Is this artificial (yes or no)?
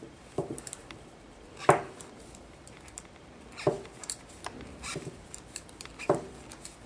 yes